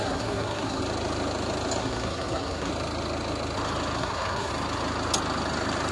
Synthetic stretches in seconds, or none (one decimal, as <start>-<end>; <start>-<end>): 0.0-0.8; 1.8-2.7; 4.0-4.5